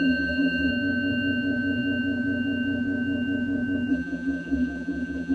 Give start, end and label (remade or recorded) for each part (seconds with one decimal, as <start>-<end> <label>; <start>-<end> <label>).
0.0-0.7 remade; 0.7-3.9 recorded; 3.9-5.3 remade